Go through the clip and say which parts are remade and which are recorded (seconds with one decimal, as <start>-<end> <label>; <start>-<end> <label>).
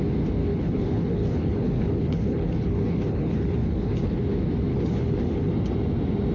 0.0-0.4 recorded; 0.4-4.2 remade; 4.2-4.7 recorded; 4.7-5.5 remade; 5.5-6.3 recorded